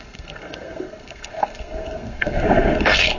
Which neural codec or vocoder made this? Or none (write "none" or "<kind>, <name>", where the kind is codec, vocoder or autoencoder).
codec, SNAC